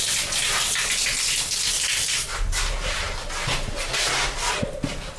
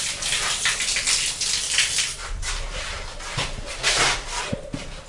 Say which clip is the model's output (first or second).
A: second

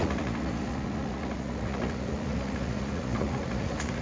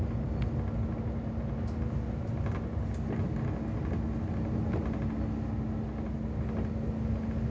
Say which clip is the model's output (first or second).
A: first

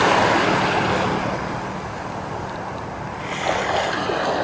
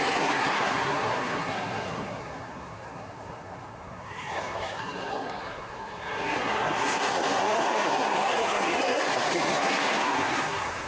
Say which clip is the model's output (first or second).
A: second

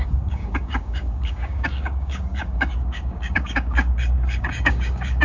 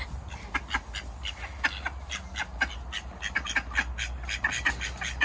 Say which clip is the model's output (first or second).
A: first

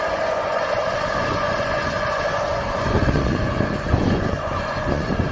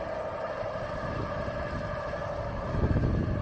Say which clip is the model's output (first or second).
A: first